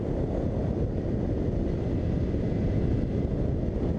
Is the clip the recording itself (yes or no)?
yes